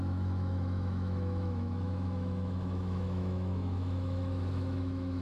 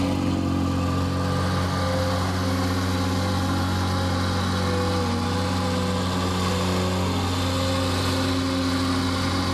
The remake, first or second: first